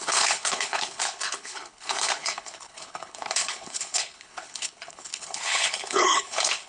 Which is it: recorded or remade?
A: remade